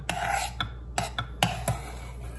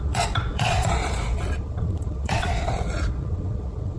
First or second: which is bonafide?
first